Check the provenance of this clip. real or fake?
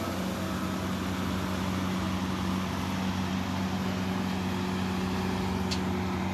real